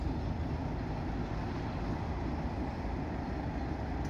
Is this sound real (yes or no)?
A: yes